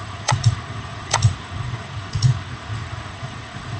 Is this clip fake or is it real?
fake